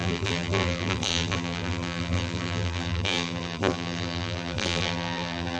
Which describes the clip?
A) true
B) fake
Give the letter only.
B